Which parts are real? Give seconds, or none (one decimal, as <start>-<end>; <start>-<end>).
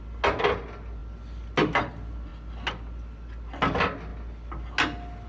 0.0-5.3